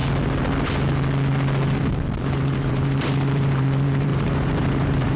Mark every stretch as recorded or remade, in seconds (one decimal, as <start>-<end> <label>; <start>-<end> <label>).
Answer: 0.0-2.2 recorded; 2.2-5.2 remade